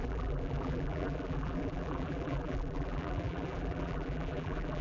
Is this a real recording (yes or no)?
no